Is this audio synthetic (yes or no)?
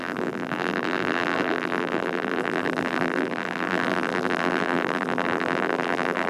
yes